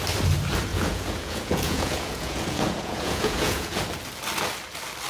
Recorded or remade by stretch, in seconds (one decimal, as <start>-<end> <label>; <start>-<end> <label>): 0.0-0.7 recorded; 0.7-3.8 remade; 3.8-5.1 recorded